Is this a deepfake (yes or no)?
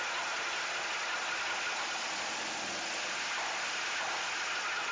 no